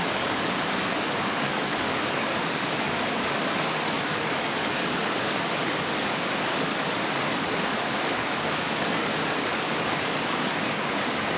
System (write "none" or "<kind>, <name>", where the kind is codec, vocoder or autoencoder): codec, DAC